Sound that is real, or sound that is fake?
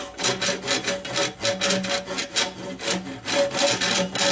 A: real